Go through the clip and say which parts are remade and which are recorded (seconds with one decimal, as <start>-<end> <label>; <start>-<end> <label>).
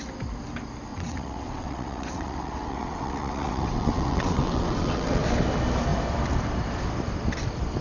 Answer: 0.0-0.9 recorded; 0.9-5.2 remade; 5.2-7.8 recorded